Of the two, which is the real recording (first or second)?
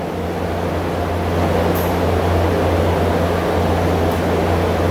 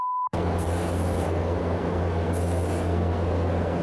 first